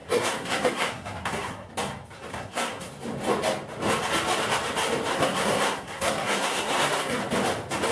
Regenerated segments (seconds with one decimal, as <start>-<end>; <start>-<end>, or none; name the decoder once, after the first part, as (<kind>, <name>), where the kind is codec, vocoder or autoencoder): 0.0-1.7 (codec, SNAC); 2.3-2.9; 5.1-7.2